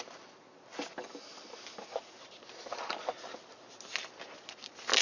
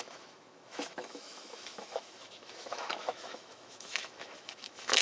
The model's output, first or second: second